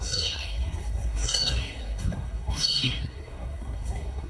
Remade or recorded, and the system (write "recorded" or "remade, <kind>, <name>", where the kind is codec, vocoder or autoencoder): remade, codec, SNAC